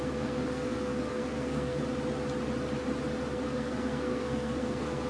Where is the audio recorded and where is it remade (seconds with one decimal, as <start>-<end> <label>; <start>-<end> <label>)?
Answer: 0.0-1.8 remade; 1.8-3.3 recorded; 3.3-5.1 remade